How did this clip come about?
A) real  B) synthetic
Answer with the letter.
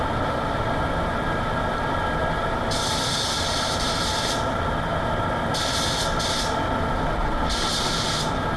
A